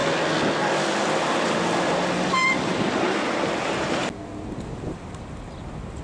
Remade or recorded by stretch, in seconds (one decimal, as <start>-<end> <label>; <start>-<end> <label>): 0.0-6.0 recorded